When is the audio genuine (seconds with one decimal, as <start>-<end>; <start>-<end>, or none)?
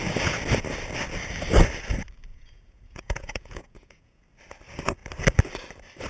0.0-2.3; 4.2-6.1